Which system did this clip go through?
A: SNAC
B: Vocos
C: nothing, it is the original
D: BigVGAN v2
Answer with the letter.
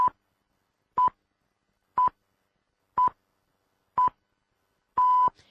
C